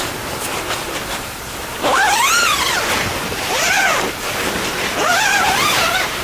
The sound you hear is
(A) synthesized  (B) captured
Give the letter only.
B